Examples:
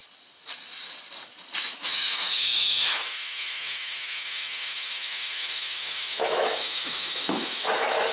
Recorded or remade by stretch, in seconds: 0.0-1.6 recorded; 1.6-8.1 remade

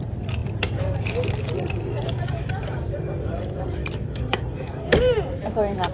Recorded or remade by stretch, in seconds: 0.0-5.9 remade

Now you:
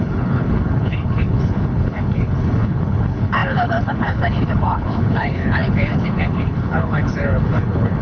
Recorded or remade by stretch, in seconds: 0.0-8.0 remade